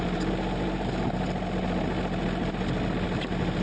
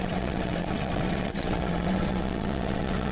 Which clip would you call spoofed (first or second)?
second